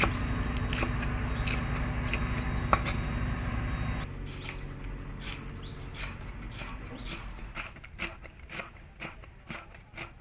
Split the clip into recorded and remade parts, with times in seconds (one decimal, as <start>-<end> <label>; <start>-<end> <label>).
0.0-10.2 recorded